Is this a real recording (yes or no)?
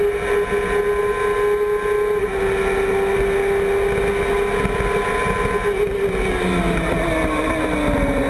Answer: yes